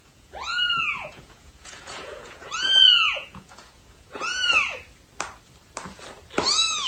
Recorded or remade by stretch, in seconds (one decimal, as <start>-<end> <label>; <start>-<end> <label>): 0.0-4.5 remade; 4.5-6.5 recorded; 6.5-6.9 remade